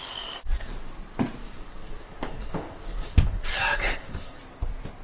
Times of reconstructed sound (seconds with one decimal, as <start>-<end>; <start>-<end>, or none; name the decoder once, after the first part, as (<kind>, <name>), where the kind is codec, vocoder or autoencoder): 0.0-0.7 (codec, DAC); 1.4-4.4